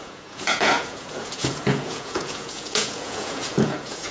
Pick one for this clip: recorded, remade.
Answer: remade